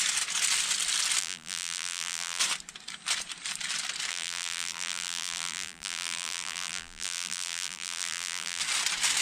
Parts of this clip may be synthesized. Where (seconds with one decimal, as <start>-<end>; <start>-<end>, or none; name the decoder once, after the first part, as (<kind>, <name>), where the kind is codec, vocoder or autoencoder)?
1.2-2.4 (vocoder, BigVGAN v2); 4.1-8.6